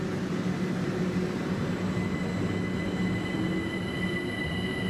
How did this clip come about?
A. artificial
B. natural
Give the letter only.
B